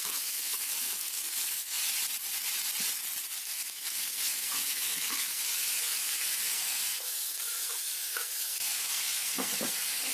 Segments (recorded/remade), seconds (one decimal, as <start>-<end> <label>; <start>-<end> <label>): 0.0-1.8 remade; 1.8-3.4 recorded; 3.4-10.1 remade